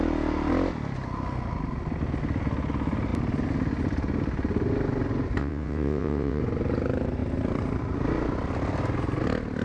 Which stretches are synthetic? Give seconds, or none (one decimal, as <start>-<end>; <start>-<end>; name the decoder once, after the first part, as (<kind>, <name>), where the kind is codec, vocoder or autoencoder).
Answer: 5.4-6.4 (vocoder, WaveNeXt)